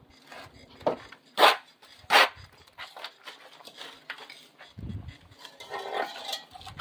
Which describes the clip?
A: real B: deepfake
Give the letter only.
A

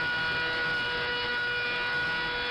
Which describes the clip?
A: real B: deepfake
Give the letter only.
A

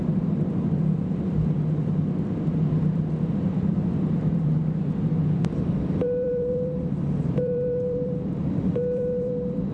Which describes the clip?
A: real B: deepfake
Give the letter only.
B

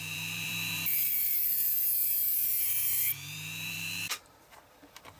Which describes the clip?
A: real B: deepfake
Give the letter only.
B